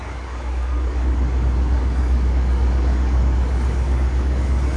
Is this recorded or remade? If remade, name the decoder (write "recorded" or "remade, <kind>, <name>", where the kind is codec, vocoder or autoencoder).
remade, codec, DAC